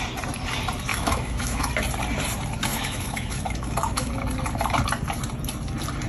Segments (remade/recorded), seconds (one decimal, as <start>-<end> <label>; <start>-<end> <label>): 0.0-0.9 recorded; 0.9-1.7 remade; 1.7-2.7 recorded; 2.7-4.1 remade; 4.1-6.1 recorded